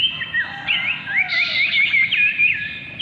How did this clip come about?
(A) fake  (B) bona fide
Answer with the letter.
B